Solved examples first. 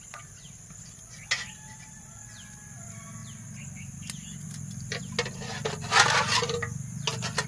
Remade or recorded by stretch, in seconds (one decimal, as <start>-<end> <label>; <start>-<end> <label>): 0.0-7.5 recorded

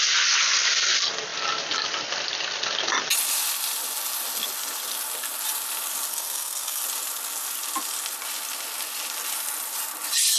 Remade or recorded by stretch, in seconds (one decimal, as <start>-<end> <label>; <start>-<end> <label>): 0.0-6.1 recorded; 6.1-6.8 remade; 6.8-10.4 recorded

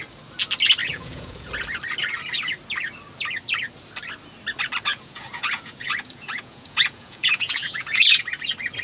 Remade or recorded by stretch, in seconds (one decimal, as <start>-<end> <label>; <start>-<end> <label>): 0.0-0.8 recorded; 0.8-1.5 remade; 1.5-4.9 recorded; 4.9-8.2 remade; 8.2-8.8 recorded